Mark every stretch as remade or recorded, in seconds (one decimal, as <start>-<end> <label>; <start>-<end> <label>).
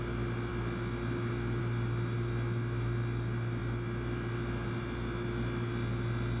0.0-6.4 recorded